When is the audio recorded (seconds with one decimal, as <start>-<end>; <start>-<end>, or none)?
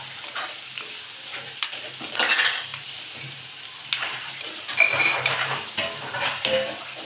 0.0-1.3; 1.9-2.7; 6.3-7.0